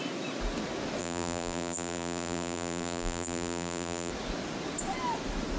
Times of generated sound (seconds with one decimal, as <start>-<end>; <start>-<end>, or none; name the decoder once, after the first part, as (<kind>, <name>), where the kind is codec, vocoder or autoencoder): 1.0-4.1 (vocoder, BigVGAN v2)